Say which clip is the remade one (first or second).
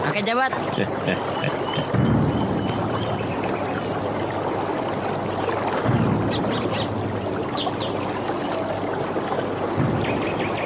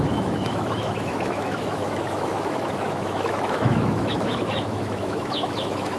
second